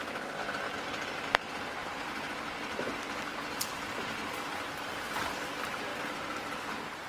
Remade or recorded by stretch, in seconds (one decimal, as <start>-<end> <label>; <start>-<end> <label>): 0.0-1.8 recorded; 1.8-2.5 remade; 2.5-4.5 recorded; 4.5-5.3 remade; 5.3-5.9 recorded; 5.9-7.1 remade